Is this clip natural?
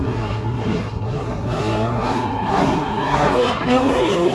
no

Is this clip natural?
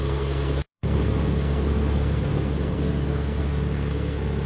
no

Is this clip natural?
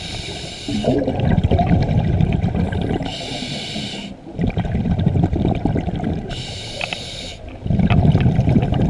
yes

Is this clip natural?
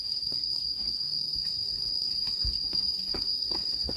no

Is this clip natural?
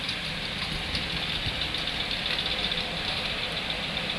yes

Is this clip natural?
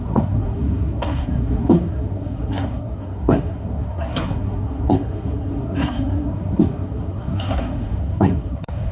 no